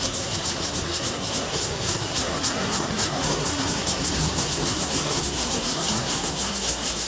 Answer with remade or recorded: remade